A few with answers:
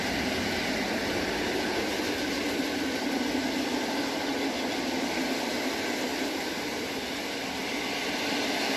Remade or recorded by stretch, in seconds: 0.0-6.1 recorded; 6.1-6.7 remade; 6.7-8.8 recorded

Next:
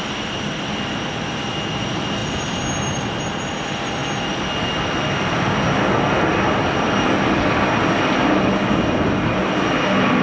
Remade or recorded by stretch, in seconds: 0.0-10.2 recorded

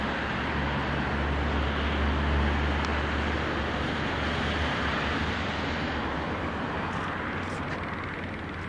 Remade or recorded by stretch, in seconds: 0.0-8.7 recorded

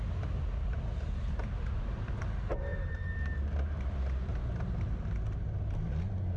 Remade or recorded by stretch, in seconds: 0.0-2.7 recorded; 2.7-3.9 remade; 3.9-4.3 recorded; 4.3-4.9 remade; 4.9-6.4 recorded

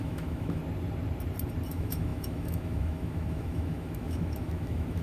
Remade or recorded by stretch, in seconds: 0.0-0.6 remade; 0.6-1.7 recorded; 1.7-5.0 remade